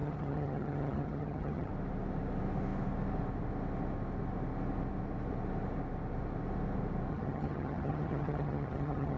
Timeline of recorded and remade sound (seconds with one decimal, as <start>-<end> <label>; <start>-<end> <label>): 0.0-1.7 remade; 1.7-7.1 recorded; 7.1-9.2 remade